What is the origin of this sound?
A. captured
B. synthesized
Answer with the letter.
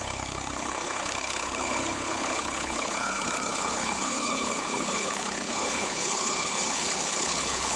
B